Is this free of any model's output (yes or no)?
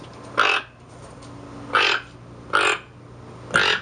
yes